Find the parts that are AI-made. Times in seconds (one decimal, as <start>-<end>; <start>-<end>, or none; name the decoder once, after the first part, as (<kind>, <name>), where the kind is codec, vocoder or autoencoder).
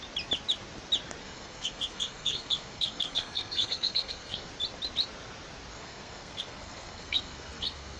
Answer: 1.2-4.5 (codec, SNAC); 5.7-8.0